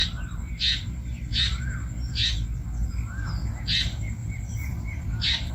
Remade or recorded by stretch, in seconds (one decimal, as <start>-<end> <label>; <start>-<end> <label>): 0.0-4.2 recorded; 4.2-5.5 remade

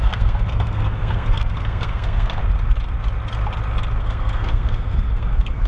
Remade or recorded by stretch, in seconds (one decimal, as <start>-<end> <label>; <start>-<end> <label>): 0.0-2.4 remade; 2.4-4.0 recorded; 4.0-5.7 remade

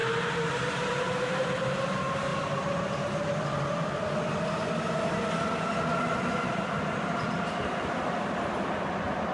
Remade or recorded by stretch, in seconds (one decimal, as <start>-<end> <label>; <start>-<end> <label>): 0.0-2.3 remade; 2.3-6.2 recorded; 6.2-9.3 remade

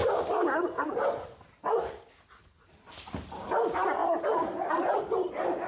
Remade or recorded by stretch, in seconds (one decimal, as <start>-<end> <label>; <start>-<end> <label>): 0.0-1.6 remade; 1.6-4.0 recorded; 4.0-4.7 remade; 4.7-5.7 recorded

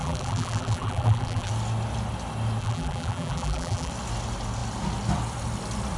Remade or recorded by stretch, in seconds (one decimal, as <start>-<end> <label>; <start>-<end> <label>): 0.0-1.5 remade; 1.5-2.6 recorded; 2.6-3.9 remade; 3.9-6.0 recorded

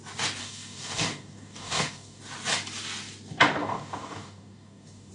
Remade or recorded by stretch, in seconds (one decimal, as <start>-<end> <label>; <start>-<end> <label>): 0.0-0.4 recorded; 0.4-2.2 remade; 2.2-3.6 recorded; 3.6-5.1 remade

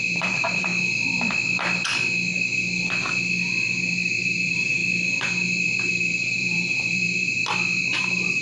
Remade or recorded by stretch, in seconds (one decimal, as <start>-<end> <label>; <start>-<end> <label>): 0.0-0.7 remade; 0.7-4.2 recorded; 4.2-4.8 remade; 4.8-5.8 recorded; 5.8-7.4 remade; 7.4-8.0 recorded; 8.0-8.4 remade